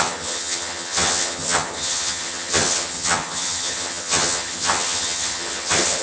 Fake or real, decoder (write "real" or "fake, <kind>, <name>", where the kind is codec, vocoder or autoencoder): fake, vocoder, HiFi-GAN